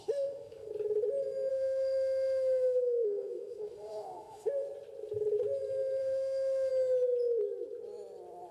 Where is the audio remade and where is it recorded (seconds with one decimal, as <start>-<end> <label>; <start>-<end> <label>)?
0.0-0.7 remade; 0.7-1.5 recorded; 1.5-4.5 remade; 4.5-6.0 recorded; 6.0-6.7 remade; 6.7-8.5 recorded